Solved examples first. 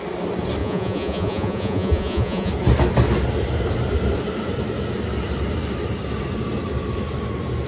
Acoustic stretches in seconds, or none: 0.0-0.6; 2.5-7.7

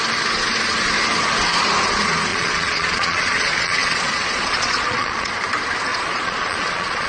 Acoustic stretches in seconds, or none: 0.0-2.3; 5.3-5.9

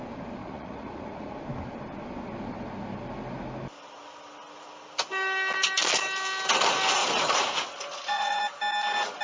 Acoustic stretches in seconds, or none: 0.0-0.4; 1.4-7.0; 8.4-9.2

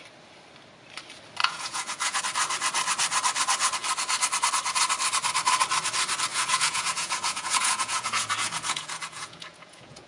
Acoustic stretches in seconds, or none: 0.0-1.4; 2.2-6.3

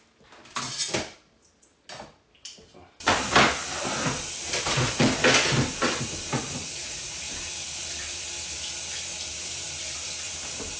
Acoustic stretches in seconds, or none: 0.0-6.6; 7.3-10.8